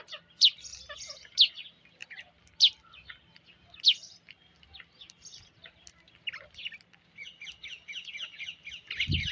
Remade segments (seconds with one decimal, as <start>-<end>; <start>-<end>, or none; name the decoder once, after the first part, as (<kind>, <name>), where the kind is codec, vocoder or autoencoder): none

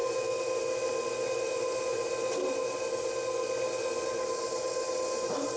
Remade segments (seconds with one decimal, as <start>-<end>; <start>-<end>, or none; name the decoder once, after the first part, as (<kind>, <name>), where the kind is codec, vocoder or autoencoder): none

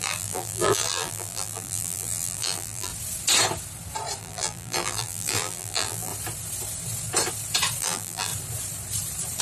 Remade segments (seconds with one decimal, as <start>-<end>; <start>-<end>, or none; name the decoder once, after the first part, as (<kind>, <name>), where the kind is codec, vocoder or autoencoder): 0.0-2.9 (vocoder, BigVGAN v2); 4.2-6.1; 7.8-8.3